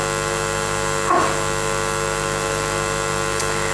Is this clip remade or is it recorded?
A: recorded